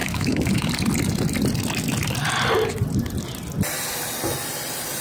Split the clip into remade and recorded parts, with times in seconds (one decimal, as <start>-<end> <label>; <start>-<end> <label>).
0.0-0.7 remade; 0.7-5.0 recorded